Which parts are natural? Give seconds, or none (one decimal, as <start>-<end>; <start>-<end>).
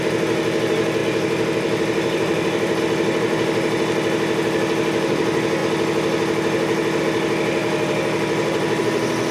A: 0.0-1.0; 2.8-7.6; 8.8-9.3